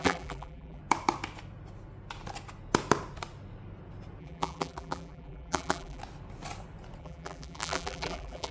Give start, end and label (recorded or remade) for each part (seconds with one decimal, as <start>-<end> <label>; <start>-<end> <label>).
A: 0.0-0.8 remade; 0.8-4.2 recorded; 4.2-6.0 remade; 6.0-7.0 recorded; 7.0-8.5 remade